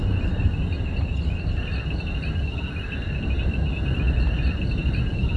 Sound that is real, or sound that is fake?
real